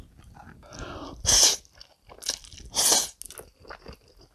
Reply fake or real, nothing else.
real